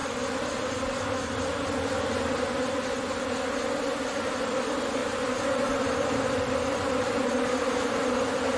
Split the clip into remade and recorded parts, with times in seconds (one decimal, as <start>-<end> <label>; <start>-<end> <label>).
0.0-5.0 recorded; 5.0-8.6 remade